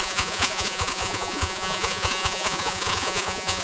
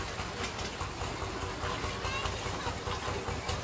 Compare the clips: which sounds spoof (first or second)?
first